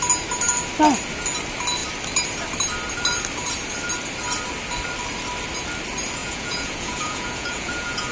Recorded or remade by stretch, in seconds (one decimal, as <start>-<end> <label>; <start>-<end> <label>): 0.0-6.2 recorded; 6.2-8.1 remade